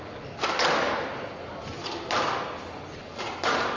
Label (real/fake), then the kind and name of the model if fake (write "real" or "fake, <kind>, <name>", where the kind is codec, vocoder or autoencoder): real